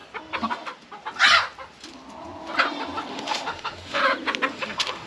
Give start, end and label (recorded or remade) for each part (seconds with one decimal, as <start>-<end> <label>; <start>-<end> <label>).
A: 0.0-3.1 recorded; 3.1-4.0 remade; 4.0-4.5 recorded; 4.5-5.1 remade